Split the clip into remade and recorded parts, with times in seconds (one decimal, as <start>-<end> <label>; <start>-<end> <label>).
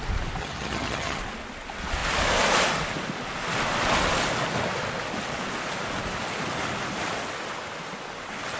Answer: 0.0-0.4 recorded; 0.4-1.2 remade; 1.2-8.6 recorded